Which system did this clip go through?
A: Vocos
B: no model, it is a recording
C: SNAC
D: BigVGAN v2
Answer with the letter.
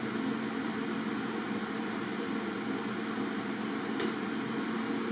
B